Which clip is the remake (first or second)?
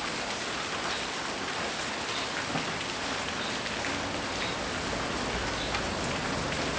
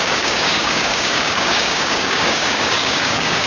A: second